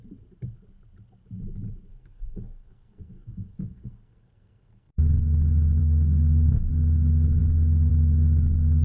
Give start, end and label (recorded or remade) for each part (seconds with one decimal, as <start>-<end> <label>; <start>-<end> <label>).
0.0-1.9 recorded; 1.9-5.0 remade; 5.0-5.8 recorded; 5.8-6.7 remade; 6.7-8.8 recorded

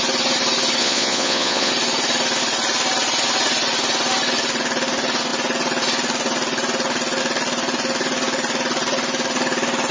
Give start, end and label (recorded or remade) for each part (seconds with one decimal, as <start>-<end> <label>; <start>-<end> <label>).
0.0-0.8 recorded; 0.8-1.7 remade; 1.7-9.9 recorded